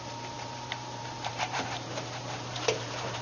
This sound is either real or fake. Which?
fake